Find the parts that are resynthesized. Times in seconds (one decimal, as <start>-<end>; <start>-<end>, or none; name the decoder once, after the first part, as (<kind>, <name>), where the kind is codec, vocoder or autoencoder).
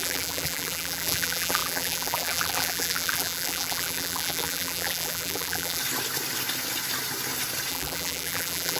0.0-5.8 (vocoder, BigVGAN v2); 7.7-8.8